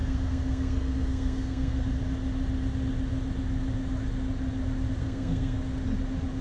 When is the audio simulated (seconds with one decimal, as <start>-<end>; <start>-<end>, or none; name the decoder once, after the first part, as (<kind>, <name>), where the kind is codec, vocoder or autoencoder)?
0.0-1.9 (codec, SNAC); 5.0-5.6